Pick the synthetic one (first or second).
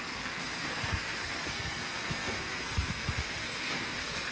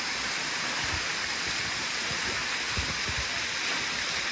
first